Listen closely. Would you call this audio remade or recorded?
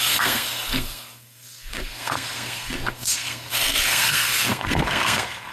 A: remade